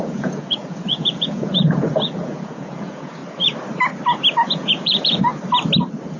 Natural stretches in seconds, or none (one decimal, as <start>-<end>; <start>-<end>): 3.2-4.5; 5.3-6.2